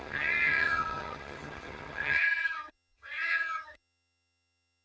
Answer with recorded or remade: remade